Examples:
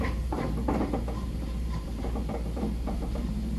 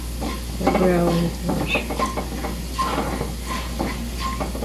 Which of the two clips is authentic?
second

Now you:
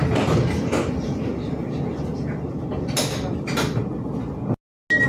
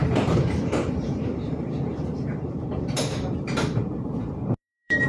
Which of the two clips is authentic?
first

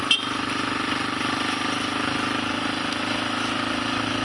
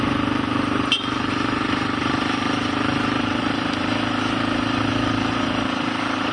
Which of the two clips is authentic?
first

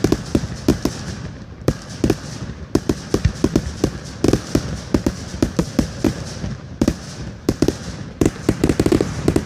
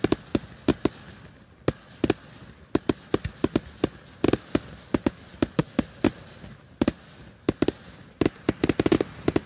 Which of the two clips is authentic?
second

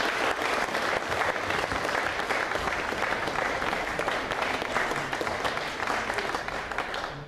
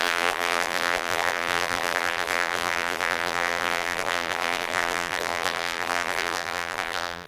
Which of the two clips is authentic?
first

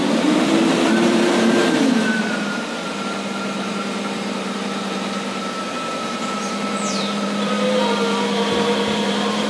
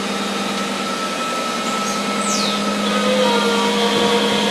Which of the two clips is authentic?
second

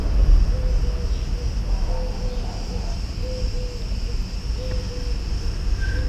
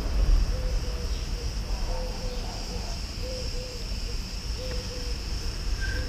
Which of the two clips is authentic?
first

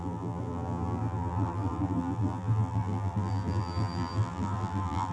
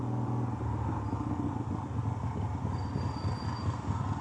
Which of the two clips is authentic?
second